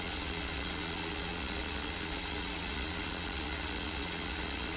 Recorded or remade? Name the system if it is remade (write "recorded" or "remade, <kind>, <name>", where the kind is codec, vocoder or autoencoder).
remade, vocoder, Vocos